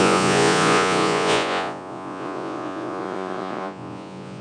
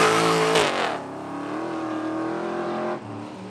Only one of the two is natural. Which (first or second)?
second